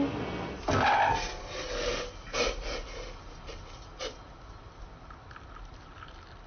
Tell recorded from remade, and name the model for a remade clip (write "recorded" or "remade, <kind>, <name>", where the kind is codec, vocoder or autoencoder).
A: recorded